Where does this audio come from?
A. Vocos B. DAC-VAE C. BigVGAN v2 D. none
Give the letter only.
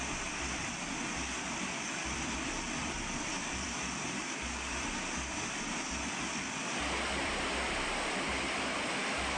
C